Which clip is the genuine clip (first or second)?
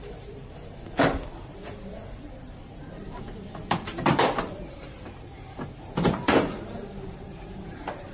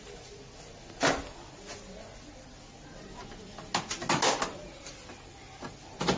second